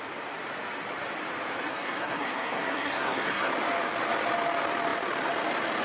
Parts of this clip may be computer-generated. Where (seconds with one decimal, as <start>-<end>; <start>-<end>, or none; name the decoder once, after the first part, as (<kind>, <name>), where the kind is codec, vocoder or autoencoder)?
1.7-3.5 (codec, SNAC)